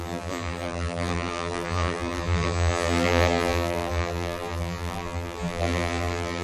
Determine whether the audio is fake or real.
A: fake